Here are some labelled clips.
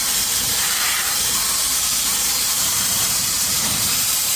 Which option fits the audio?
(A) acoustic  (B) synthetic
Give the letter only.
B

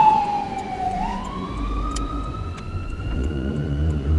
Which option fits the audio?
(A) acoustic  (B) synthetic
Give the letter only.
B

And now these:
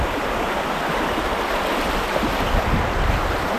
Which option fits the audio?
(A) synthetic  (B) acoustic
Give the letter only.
B